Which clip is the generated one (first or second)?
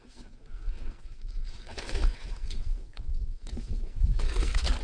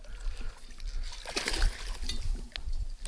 first